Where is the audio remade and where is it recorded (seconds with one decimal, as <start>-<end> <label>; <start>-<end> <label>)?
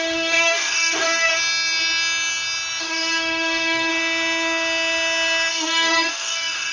0.0-1.3 remade; 1.3-2.8 recorded; 2.8-3.9 remade; 3.9-5.5 recorded; 5.5-6.7 remade